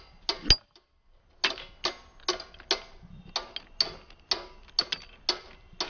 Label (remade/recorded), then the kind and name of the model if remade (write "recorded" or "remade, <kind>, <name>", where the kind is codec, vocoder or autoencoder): recorded